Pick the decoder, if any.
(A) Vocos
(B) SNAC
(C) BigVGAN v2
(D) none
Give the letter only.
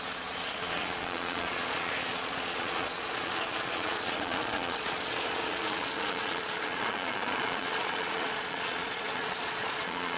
A